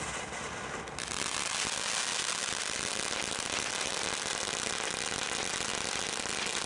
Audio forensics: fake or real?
real